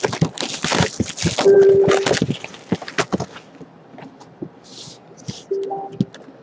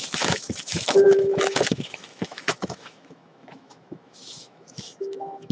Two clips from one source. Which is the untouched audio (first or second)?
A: first